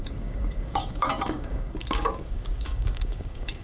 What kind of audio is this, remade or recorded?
remade